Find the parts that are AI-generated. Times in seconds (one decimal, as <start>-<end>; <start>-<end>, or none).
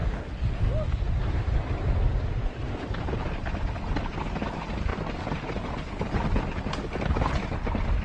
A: none